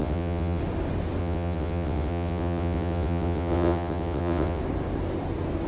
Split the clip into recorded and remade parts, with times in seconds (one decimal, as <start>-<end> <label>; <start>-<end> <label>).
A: 0.0-0.6 remade; 0.6-1.2 recorded; 1.2-4.6 remade; 4.6-5.7 recorded